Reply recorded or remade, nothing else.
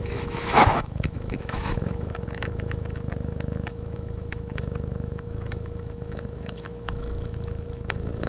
remade